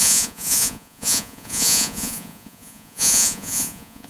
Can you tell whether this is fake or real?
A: fake